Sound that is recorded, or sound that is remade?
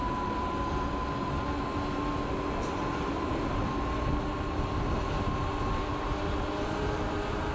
recorded